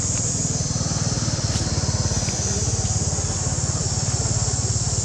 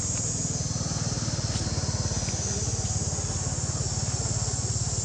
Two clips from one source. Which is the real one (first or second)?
second